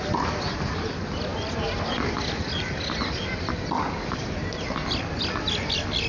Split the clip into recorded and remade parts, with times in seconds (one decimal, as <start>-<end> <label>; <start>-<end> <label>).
0.0-6.1 recorded